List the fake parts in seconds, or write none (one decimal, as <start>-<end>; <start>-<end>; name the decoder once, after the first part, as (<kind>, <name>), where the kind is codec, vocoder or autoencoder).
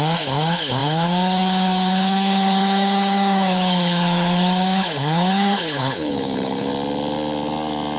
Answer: 0.0-6.7 (codec, HILCodec)